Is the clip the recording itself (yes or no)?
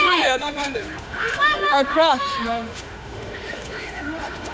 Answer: no